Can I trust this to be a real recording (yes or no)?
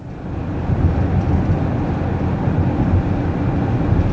yes